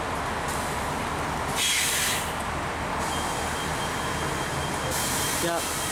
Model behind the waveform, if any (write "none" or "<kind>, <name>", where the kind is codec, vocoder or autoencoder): none